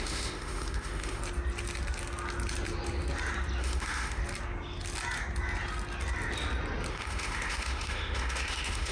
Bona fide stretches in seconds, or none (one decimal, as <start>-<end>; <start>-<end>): 1.2-3.6; 4.2-6.9

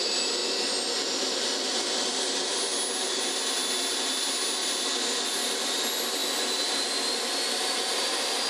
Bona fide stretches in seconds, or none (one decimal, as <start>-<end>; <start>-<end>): 0.0-8.5

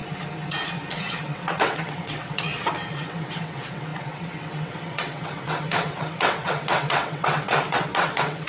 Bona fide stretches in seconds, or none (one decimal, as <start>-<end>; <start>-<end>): 0.0-0.9

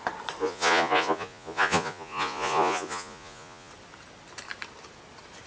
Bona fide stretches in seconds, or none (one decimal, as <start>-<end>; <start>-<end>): 0.0-0.4; 3.7-5.5

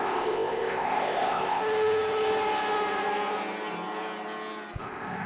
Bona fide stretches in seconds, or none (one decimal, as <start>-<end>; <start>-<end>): 1.6-4.8

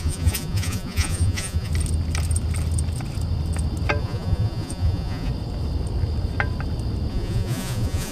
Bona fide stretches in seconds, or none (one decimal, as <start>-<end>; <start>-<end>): 1.7-4.0; 5.3-7.1